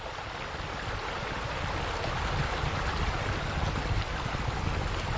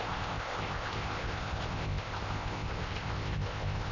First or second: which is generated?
second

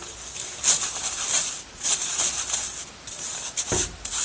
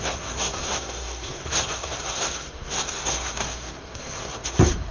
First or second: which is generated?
second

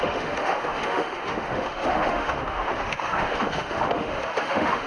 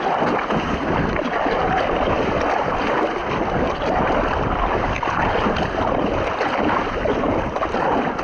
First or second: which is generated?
first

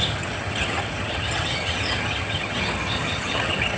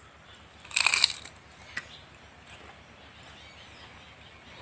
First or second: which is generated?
first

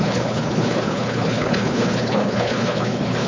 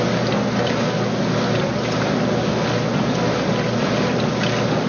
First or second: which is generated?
first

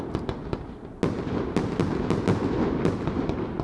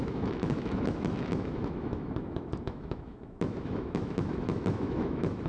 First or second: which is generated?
second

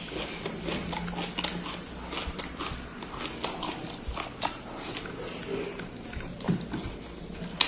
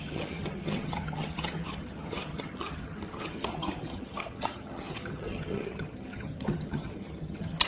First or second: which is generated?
second